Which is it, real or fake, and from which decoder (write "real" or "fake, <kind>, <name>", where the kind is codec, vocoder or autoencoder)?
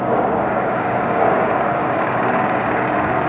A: fake, codec, DAC